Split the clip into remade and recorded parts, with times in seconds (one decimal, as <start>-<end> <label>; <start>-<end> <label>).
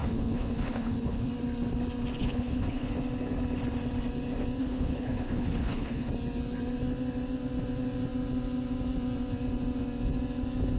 0.0-1.3 remade; 1.3-2.2 recorded; 2.2-2.9 remade; 2.9-4.6 recorded; 4.6-6.1 remade; 6.1-10.8 recorded